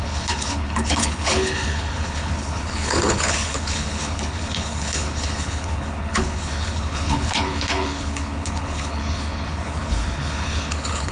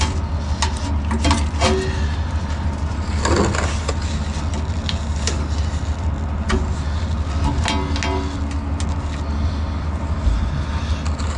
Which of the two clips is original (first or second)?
second